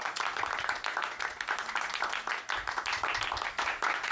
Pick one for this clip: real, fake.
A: real